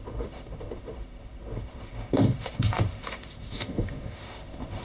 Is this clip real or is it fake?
fake